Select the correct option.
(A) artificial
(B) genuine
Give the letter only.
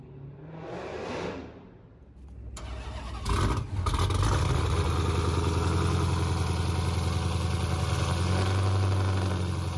B